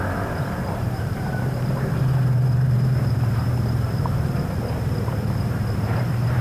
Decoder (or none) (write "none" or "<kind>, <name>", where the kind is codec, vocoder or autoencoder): vocoder, BigVGAN v2